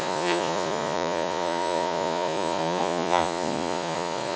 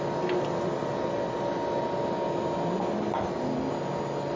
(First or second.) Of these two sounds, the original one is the second